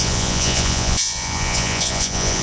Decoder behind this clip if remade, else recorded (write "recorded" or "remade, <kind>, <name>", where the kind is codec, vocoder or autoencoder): remade, vocoder, Vocos